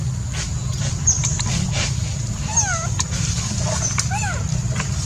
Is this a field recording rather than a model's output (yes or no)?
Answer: no